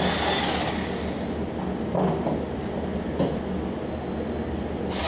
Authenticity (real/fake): real